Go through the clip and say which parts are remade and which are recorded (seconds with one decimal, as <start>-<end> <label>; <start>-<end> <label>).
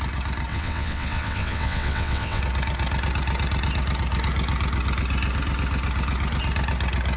0.0-0.5 recorded; 0.5-2.4 remade; 2.4-7.2 recorded